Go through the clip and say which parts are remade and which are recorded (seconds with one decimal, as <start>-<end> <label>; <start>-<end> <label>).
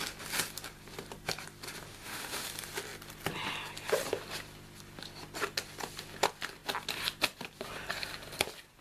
0.0-1.9 recorded; 1.9-2.5 remade; 2.5-8.8 recorded